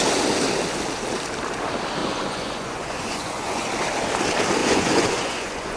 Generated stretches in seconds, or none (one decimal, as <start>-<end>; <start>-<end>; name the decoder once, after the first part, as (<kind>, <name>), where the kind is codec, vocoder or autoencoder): 2.0-3.7 (vocoder, Vocos); 4.6-5.8